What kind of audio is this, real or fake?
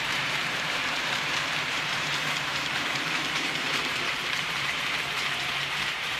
fake